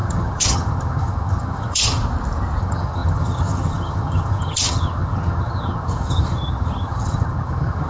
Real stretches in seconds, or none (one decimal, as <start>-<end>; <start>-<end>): 2.0-2.6